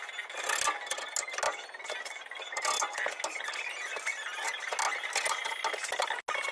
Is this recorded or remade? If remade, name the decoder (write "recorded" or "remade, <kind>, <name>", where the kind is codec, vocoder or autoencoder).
recorded